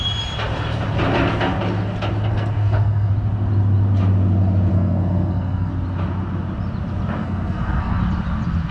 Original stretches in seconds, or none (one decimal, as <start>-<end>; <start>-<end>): 0.0-2.3; 3.1-4.7; 5.7-7.2; 8.0-8.7